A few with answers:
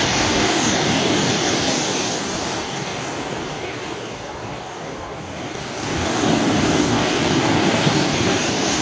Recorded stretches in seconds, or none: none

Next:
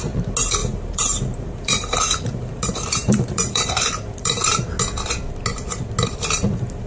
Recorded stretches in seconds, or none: 0.0-0.6; 4.7-6.9

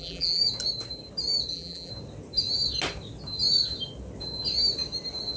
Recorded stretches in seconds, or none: 0.4-1.5; 1.9-5.4

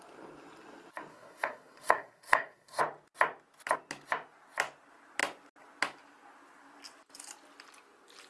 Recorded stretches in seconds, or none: 0.0-1.1; 2.8-8.3

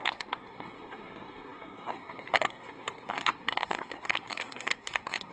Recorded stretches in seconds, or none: none

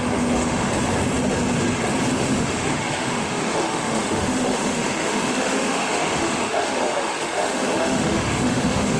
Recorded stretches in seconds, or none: 0.7-2.1

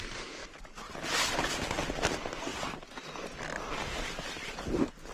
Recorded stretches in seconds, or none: 0.0-5.1

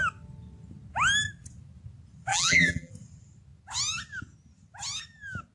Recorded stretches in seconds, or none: 0.0-2.3; 2.9-5.5